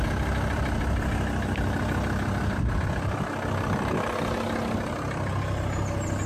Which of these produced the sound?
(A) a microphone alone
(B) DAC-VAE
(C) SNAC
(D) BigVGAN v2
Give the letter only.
A